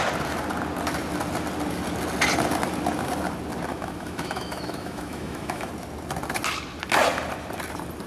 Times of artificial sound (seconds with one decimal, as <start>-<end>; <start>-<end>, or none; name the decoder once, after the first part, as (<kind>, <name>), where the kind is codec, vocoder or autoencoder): 3.7-5.7 (autoencoder, DAC-VAE)